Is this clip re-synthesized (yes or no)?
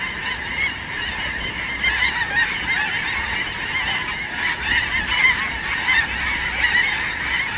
no